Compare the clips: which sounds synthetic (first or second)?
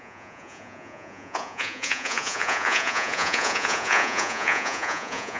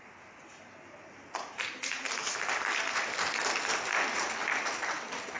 first